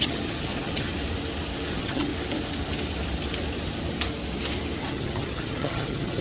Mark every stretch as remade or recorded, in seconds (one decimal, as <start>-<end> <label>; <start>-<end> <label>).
0.0-0.9 remade; 0.9-1.7 recorded; 1.7-2.1 remade; 2.1-4.8 recorded; 4.8-6.2 remade